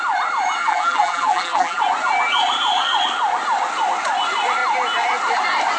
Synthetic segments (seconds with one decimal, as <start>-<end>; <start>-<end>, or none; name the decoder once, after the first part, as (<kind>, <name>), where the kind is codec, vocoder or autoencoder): 0.6-1.8 (vocoder, BigVGAN v2)